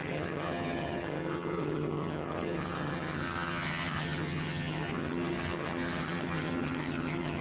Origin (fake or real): fake